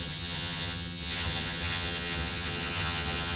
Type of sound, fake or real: fake